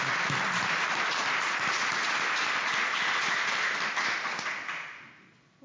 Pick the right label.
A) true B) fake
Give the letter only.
A